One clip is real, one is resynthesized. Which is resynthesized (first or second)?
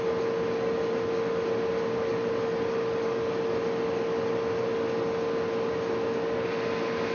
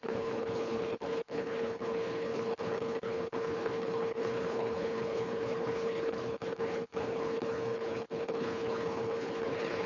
second